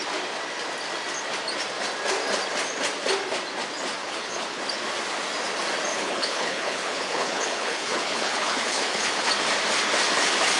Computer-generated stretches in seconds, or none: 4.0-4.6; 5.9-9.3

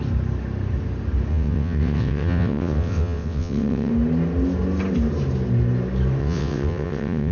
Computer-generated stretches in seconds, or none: 1.3-3.9; 6.2-7.3

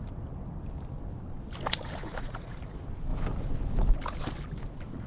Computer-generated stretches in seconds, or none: 2.0-2.6

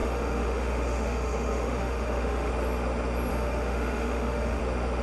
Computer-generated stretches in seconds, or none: 0.0-2.5; 3.3-4.6

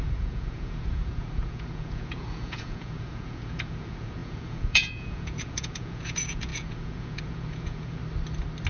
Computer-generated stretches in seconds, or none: 0.0-8.0

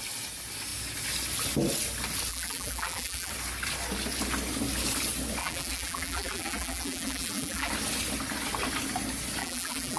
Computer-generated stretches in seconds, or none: 2.3-3.3; 5.4-7.7; 9.4-10.0